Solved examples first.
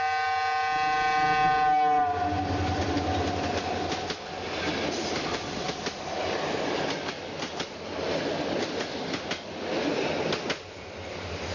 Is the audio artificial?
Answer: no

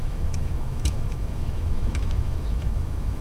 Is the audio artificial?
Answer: yes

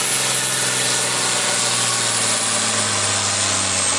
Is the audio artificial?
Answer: no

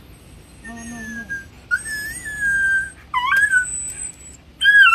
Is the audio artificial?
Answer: no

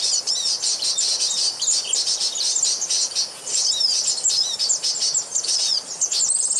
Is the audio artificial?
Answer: no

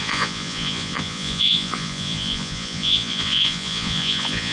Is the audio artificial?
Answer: yes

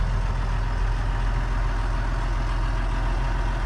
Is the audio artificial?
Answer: no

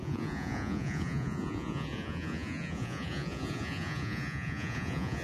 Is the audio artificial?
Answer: yes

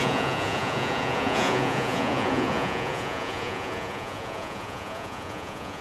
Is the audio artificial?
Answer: yes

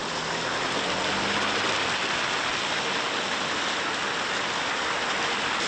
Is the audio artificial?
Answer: no